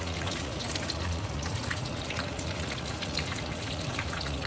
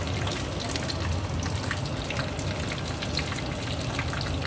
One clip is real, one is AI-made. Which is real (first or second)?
second